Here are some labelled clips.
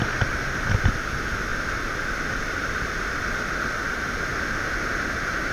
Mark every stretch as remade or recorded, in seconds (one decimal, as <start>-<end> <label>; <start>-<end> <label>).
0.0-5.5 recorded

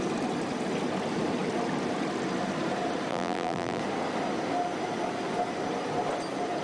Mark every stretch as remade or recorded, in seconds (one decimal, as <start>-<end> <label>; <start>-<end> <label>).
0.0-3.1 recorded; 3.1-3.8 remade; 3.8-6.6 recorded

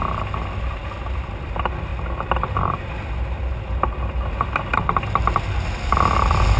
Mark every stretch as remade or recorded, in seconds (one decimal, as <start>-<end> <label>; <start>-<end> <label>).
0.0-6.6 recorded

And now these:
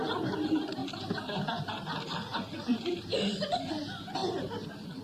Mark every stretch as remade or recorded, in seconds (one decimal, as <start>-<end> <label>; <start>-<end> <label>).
0.0-2.3 recorded; 2.3-3.7 remade; 3.7-5.0 recorded

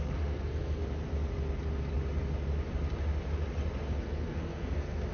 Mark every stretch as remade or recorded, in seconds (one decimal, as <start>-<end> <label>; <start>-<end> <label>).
0.0-0.8 remade; 0.8-3.9 recorded; 3.9-5.1 remade

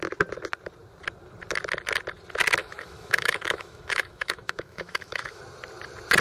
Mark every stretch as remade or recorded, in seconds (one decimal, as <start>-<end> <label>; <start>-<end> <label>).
0.0-2.6 recorded; 2.6-5.4 remade; 5.4-6.2 recorded

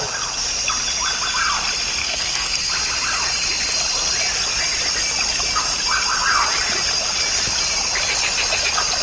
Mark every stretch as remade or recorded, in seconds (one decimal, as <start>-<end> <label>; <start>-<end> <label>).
0.0-2.0 recorded; 2.0-2.7 remade; 2.7-9.0 recorded

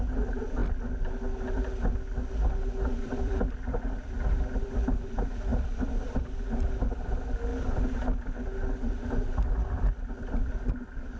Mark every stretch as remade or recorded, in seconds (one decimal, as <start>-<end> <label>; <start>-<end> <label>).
0.0-0.6 remade; 0.6-3.0 recorded; 3.0-7.5 remade; 7.5-9.5 recorded; 9.5-11.2 remade